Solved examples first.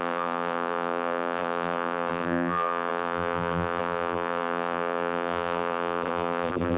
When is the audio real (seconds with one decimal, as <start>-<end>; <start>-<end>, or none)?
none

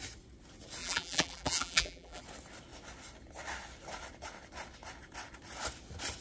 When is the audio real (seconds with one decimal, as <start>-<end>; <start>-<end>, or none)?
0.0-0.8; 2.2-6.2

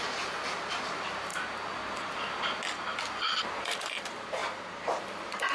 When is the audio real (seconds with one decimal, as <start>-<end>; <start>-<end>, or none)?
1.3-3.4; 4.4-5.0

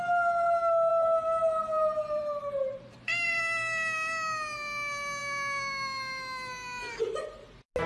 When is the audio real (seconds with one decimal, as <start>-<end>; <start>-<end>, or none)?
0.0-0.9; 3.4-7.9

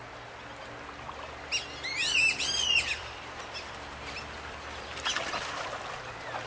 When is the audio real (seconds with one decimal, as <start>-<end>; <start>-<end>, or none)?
0.0-1.9; 5.8-6.5

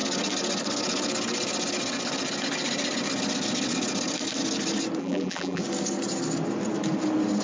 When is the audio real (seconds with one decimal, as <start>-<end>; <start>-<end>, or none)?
0.0-5.0; 5.6-7.4

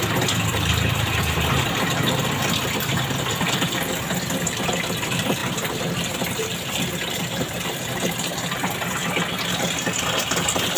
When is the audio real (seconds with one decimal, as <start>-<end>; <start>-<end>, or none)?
7.8-10.2